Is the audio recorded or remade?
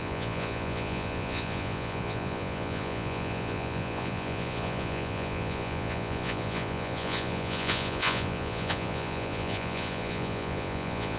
remade